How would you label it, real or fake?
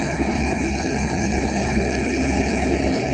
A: fake